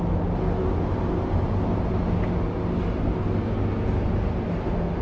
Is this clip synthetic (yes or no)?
no